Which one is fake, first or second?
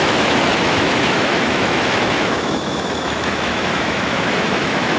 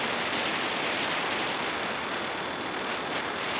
first